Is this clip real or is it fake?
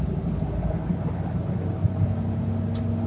real